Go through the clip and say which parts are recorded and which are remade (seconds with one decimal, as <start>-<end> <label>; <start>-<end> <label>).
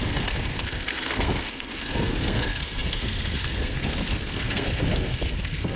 0.0-5.8 remade